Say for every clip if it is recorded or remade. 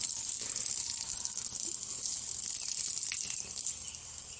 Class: recorded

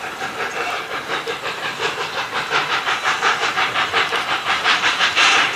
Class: remade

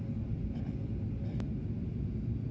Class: recorded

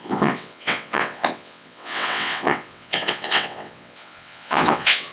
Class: remade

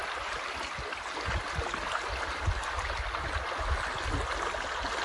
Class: recorded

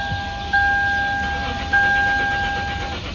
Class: recorded